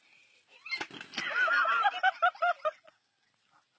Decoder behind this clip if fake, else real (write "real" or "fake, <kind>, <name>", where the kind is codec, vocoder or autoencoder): real